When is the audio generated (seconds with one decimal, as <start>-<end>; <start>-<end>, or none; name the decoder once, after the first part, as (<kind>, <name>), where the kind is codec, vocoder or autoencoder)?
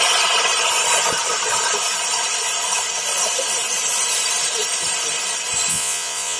5.7-6.4 (vocoder, Vocos)